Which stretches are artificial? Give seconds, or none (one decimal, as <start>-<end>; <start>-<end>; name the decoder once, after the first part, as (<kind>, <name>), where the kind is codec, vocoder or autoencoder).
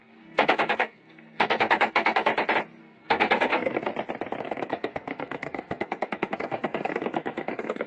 0.0-2.3 (codec, SNAC); 2.8-3.9; 4.4-7.9